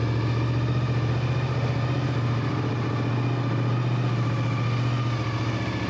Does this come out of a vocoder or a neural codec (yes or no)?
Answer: no